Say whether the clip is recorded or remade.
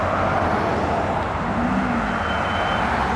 recorded